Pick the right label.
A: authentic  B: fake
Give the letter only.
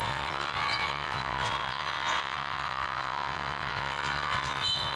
B